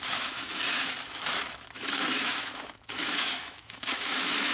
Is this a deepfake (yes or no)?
yes